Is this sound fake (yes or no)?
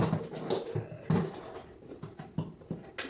no